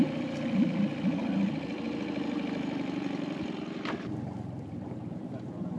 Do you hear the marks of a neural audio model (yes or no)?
yes